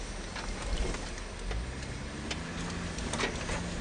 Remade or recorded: recorded